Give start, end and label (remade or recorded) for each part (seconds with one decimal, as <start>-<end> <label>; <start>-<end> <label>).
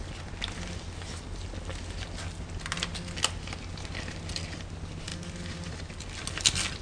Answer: 0.0-6.8 recorded